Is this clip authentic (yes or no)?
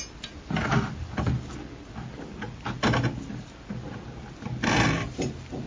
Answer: yes